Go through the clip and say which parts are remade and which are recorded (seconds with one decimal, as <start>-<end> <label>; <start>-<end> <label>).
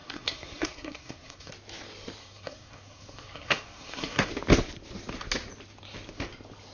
0.0-1.5 remade; 1.5-2.2 recorded; 2.2-4.3 remade; 4.3-6.7 recorded